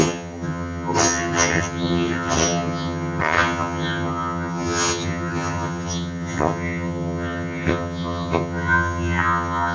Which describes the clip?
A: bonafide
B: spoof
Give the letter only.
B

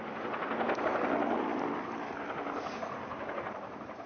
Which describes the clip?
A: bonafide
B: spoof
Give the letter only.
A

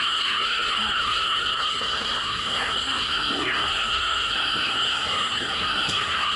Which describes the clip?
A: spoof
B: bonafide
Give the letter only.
A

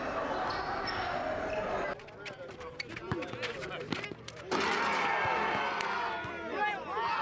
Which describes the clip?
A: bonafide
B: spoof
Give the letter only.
A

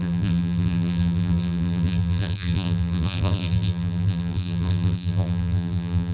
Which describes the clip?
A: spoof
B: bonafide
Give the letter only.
A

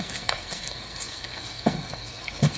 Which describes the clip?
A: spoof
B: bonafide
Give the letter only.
A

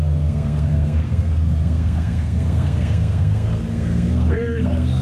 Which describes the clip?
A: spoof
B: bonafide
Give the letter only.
A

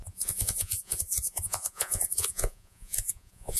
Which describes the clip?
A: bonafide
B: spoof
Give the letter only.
B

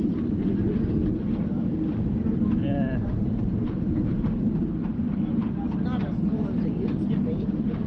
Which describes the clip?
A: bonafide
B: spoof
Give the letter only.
A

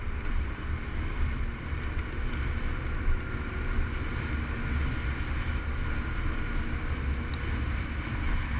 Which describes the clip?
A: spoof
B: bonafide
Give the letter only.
B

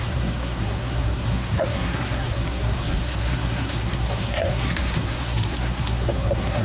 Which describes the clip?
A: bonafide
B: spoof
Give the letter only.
B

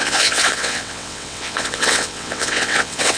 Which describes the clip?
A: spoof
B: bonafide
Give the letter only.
A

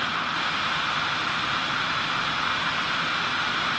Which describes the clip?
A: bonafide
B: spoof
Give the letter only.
A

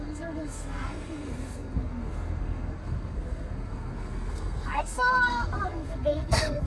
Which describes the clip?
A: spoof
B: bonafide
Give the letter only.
A